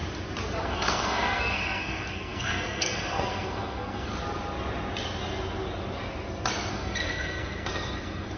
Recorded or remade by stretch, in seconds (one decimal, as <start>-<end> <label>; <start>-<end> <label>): 0.0-0.6 recorded; 0.6-4.1 remade; 4.1-6.7 recorded; 6.7-8.4 remade